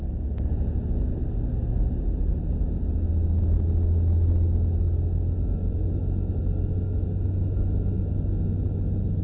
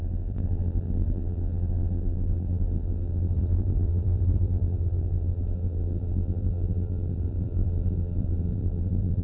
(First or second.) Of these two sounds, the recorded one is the first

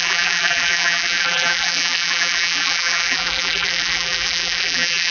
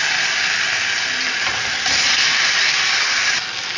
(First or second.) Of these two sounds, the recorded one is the second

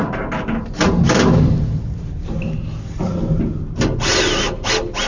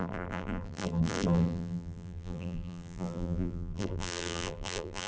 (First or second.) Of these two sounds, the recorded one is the first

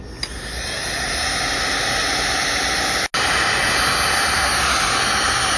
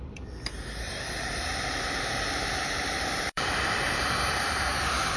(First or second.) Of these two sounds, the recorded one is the first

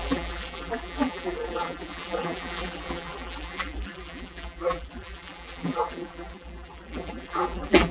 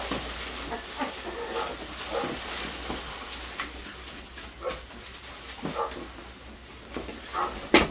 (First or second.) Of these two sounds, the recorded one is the second